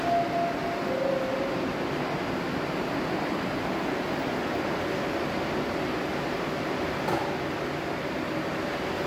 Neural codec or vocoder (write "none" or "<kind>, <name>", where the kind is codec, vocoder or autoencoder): none